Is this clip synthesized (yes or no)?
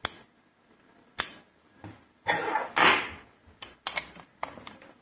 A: no